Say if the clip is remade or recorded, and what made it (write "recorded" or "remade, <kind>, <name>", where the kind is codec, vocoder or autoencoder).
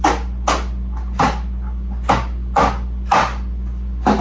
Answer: recorded